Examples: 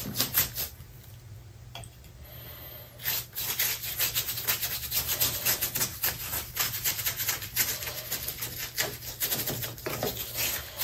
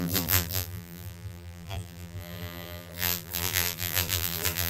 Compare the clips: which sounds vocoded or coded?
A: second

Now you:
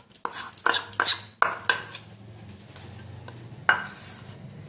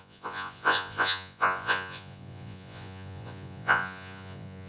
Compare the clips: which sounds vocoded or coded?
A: second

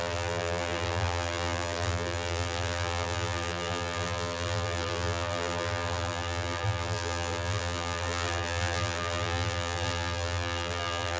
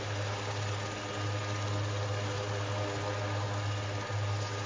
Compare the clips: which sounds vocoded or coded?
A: first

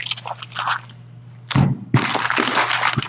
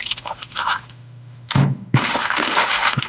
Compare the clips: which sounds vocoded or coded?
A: second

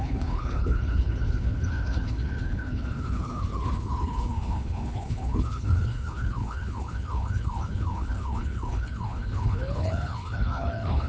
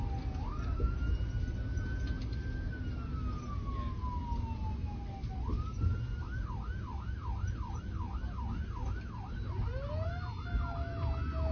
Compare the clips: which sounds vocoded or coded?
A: first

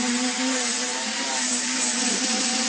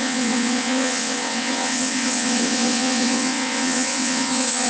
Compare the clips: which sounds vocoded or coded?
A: second